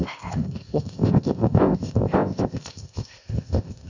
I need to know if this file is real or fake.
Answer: fake